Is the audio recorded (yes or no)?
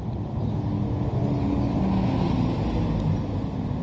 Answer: yes